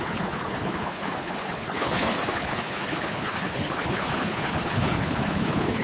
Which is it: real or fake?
fake